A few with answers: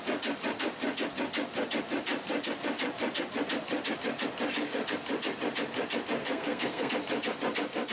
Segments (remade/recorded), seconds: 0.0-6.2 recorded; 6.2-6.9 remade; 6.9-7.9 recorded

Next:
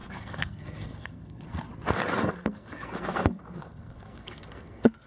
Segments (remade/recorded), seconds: 0.0-1.7 remade; 1.7-2.4 recorded; 2.4-5.1 remade

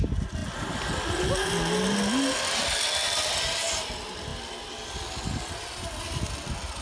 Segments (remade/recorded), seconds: 0.0-6.8 recorded

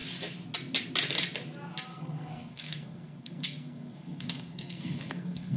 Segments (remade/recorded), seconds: 0.0-1.9 recorded; 1.9-5.6 remade